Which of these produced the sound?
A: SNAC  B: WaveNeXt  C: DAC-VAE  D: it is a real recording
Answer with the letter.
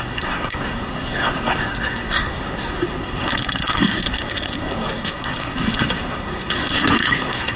A